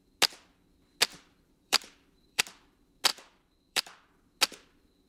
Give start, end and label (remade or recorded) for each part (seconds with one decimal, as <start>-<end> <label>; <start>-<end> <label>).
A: 0.0-1.1 recorded; 1.1-2.4 remade; 2.4-3.1 recorded; 3.1-4.1 remade; 4.1-5.1 recorded